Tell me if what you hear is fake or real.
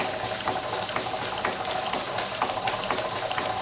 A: real